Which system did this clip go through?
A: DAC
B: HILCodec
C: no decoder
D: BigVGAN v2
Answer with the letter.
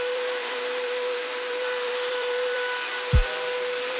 D